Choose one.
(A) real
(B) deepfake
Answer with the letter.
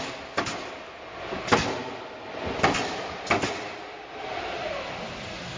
A